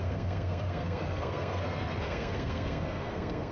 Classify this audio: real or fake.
fake